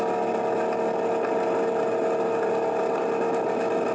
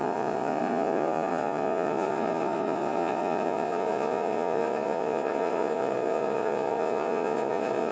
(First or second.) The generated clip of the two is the second